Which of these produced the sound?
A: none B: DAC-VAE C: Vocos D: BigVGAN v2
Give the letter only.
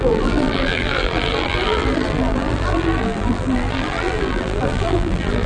D